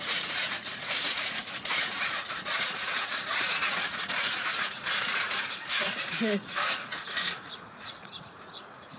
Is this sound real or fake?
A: fake